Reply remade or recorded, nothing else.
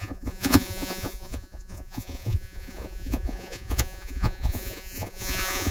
remade